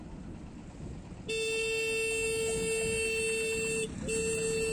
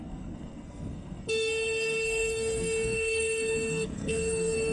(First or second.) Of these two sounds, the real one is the first